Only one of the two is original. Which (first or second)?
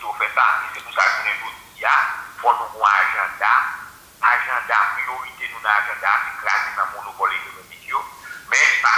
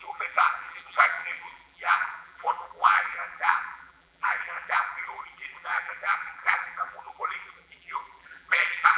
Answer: first